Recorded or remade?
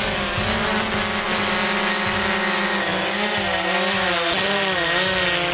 recorded